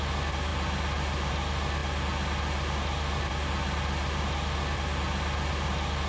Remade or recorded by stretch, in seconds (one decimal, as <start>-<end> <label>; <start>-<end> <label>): 0.0-6.1 recorded